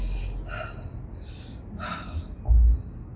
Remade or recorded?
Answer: recorded